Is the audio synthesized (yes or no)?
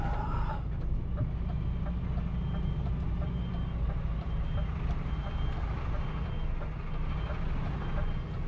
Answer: no